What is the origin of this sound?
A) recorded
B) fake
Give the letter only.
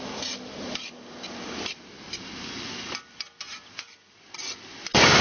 A